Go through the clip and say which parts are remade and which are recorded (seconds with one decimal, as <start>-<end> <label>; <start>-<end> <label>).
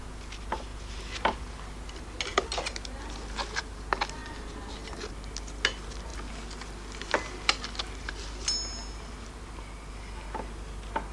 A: 0.0-11.1 recorded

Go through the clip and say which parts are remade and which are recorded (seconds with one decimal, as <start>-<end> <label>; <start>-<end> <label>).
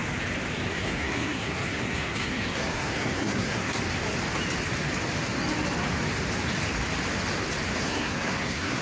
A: 0.0-0.7 recorded; 0.7-3.8 remade; 3.8-7.8 recorded; 7.8-8.8 remade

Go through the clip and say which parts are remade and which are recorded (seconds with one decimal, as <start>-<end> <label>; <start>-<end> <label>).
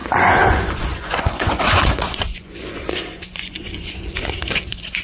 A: 0.0-5.0 remade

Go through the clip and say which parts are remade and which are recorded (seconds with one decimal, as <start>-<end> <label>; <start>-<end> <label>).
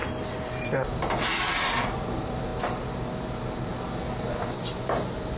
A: 0.0-2.5 remade; 2.5-4.2 recorded; 4.2-5.4 remade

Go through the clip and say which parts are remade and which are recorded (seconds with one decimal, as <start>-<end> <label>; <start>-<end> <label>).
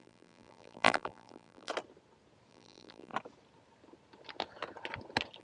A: 0.0-1.7 remade; 1.7-2.5 recorded; 2.5-3.1 remade; 3.1-5.4 recorded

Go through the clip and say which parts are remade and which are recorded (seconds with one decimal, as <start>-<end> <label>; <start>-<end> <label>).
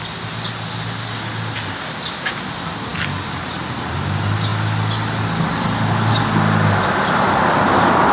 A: 0.0-8.1 recorded